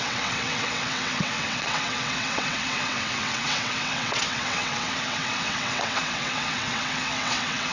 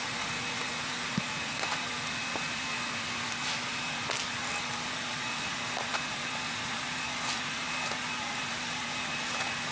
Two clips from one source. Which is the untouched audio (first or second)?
second